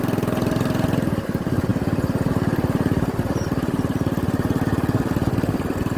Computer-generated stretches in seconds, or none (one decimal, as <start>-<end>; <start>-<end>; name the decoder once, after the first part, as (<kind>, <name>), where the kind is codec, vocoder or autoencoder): none